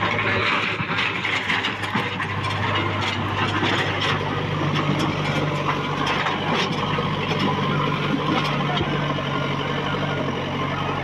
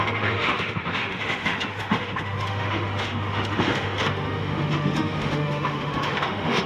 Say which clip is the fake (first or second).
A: second